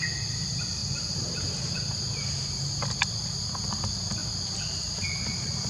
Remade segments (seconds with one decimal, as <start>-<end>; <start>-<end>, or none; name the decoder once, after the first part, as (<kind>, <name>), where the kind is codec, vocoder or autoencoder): none